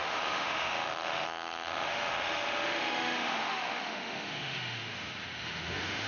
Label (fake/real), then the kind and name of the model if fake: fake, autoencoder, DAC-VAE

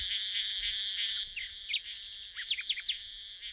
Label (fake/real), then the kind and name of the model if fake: real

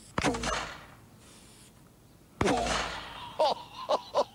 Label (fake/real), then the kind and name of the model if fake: real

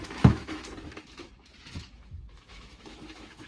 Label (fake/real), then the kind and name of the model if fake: fake, autoencoder, DAC-VAE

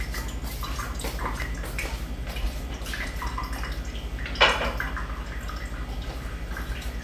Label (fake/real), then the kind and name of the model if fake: real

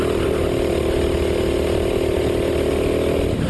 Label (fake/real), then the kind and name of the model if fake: real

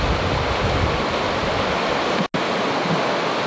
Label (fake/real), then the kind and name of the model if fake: real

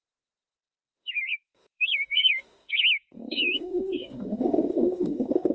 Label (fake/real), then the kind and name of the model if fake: fake, autoencoder, DAC-VAE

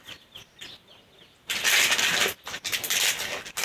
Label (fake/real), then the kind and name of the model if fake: real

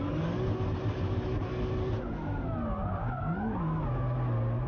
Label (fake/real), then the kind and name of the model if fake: real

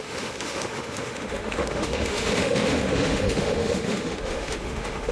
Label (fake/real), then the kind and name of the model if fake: fake, autoencoder, DAC-VAE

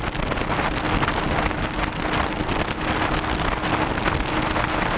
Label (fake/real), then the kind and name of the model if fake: real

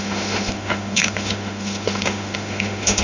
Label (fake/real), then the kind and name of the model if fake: fake, autoencoder, DAC-VAE